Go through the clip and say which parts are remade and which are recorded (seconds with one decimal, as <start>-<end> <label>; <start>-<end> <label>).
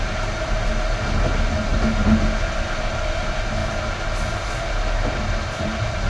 0.0-6.1 recorded